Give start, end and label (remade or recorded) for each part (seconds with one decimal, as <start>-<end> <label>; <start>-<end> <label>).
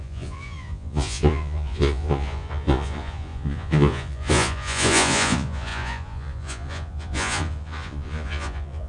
0.0-8.9 remade